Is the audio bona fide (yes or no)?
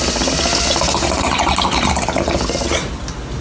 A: yes